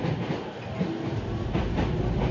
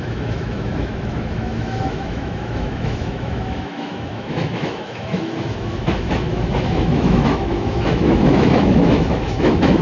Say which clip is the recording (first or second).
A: first